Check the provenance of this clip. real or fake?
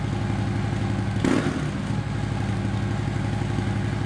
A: real